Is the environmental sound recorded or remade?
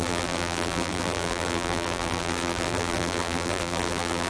remade